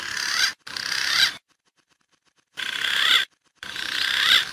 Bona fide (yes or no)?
no